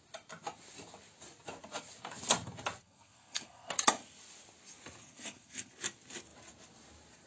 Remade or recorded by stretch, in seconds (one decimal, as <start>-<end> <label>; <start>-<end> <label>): 0.0-2.8 recorded; 2.8-3.7 remade; 3.7-5.0 recorded; 5.0-5.7 remade; 5.7-7.3 recorded